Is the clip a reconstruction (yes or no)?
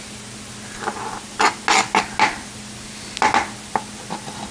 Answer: no